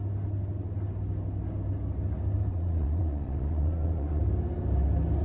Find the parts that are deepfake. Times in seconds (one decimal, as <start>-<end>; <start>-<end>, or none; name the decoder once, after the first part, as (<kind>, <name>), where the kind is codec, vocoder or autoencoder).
2.5-4.2 (vocoder, Vocos)